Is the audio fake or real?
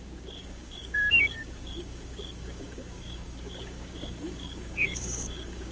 fake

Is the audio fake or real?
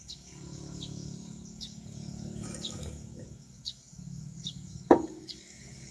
fake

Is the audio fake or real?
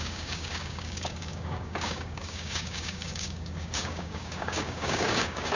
fake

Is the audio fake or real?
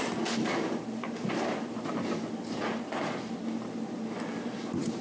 real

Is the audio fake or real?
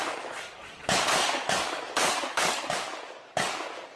fake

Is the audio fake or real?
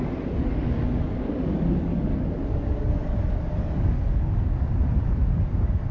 fake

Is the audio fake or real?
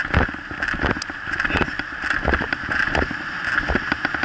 real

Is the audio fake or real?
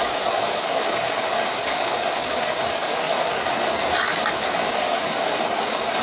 fake